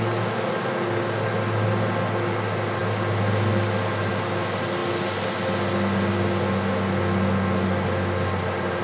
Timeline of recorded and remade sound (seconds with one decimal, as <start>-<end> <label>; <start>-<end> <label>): 0.0-8.8 recorded

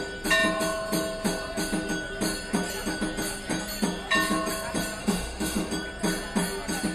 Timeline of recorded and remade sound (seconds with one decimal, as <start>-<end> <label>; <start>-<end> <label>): 0.0-5.0 recorded; 5.0-5.7 remade; 5.7-6.9 recorded

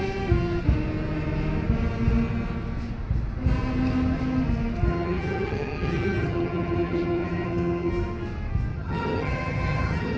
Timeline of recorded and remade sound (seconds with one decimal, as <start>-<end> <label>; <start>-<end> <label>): 0.0-4.9 recorded; 4.9-7.9 remade; 7.9-8.7 recorded; 8.7-10.2 remade

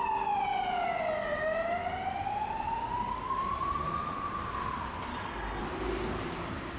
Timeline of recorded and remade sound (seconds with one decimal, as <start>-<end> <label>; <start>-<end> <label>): 0.0-5.1 recorded; 5.1-5.6 remade; 5.6-6.8 recorded